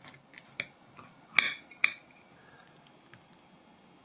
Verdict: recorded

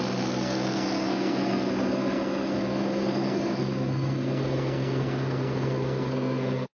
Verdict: remade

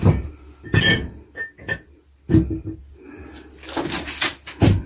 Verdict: recorded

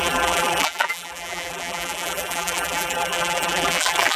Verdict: remade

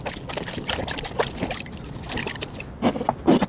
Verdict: recorded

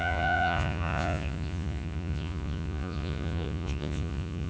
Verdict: remade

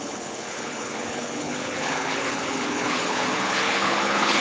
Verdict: remade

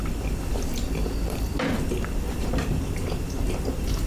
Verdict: recorded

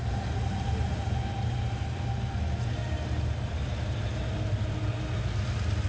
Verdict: recorded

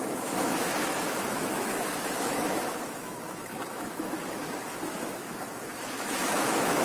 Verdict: remade